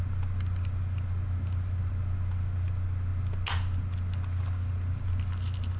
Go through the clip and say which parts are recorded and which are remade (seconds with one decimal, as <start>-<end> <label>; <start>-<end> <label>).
0.0-5.8 recorded